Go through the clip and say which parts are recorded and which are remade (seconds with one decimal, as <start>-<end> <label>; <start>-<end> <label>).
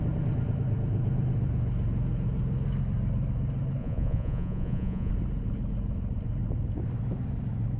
0.0-3.8 recorded; 3.8-5.1 remade; 5.1-7.8 recorded